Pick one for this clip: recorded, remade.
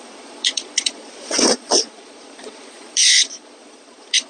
remade